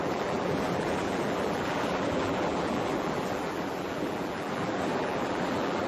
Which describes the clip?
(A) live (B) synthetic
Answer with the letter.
B